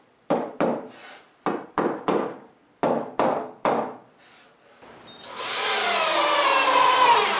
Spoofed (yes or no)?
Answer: no